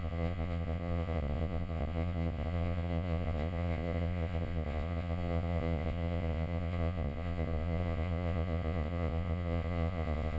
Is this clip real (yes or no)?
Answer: no